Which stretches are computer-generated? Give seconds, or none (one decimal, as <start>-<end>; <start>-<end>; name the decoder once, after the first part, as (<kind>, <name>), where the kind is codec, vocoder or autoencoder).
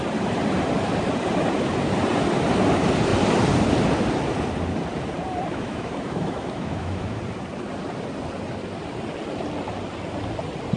5.5-7.2 (autoencoder, DAC-VAE)